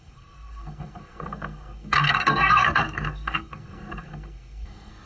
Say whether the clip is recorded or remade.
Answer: remade